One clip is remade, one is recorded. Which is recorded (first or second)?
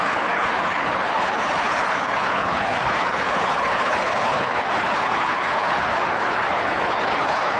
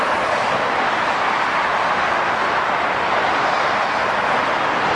second